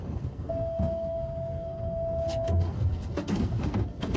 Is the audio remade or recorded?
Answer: remade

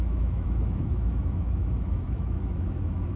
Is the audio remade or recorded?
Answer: remade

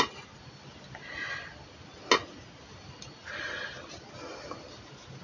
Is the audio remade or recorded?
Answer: recorded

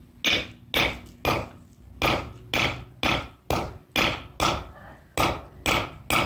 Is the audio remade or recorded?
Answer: recorded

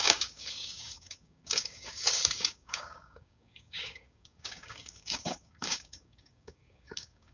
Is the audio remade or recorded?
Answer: remade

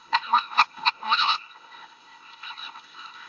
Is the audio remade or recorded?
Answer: remade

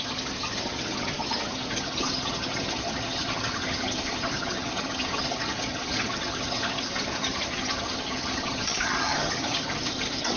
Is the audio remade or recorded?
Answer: remade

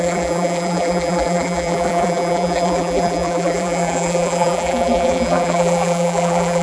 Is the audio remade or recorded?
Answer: remade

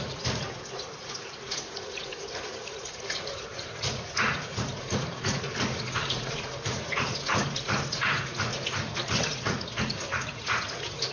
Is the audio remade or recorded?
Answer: remade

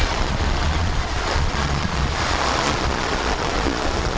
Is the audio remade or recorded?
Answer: remade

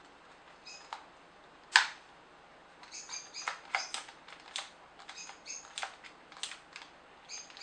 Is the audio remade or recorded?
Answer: recorded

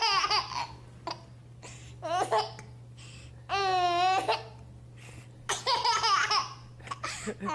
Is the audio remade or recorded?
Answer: recorded